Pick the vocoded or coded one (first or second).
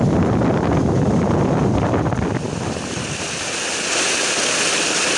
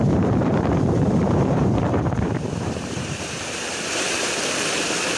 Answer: second